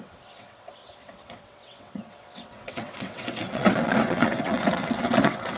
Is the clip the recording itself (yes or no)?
no